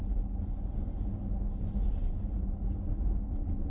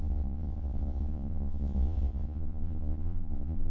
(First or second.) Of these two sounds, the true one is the first